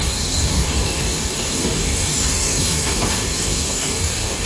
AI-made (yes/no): yes